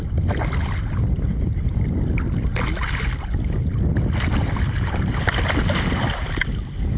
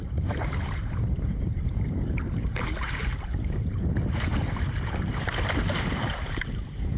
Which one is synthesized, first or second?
second